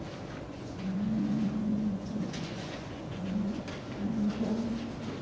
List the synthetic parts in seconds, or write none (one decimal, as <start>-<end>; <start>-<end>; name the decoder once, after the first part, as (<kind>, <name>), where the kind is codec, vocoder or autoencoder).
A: 0.5-3.6 (vocoder, Vocos)

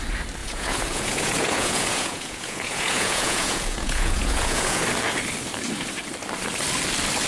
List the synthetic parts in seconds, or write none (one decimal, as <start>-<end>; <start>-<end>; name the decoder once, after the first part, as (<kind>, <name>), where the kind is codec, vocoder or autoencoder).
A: 0.4-4.8 (vocoder, Vocos)

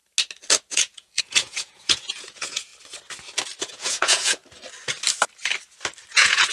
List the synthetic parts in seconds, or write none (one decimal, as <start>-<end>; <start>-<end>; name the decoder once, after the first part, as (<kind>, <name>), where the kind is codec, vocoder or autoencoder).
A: 0.7-2.7 (vocoder, Vocos); 3.6-4.4; 6.1-6.5

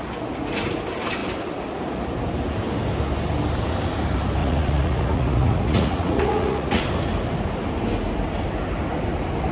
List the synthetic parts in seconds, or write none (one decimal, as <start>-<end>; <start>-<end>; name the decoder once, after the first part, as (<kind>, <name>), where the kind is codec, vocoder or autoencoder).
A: 4.4-6.8 (vocoder, Vocos)

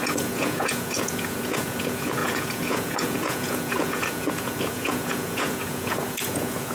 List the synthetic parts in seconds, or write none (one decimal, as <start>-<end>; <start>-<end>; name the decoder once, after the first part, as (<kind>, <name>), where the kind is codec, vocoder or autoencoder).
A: 0.0-6.7 (vocoder, Vocos)

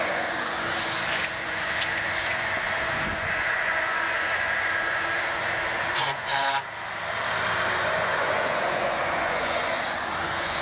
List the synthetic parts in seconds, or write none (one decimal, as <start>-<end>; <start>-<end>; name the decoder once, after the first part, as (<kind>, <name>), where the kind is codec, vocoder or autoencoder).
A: 0.0-6.3 (vocoder, Vocos); 7.8-10.6